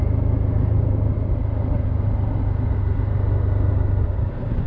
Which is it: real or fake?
real